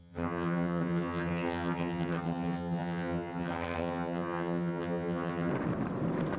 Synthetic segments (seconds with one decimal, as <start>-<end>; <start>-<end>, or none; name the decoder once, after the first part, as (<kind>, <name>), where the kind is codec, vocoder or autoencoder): 0.0-5.5 (vocoder, HiFi-GAN)